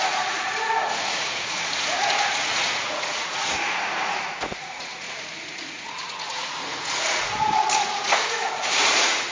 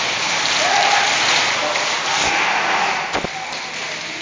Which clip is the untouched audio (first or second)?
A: second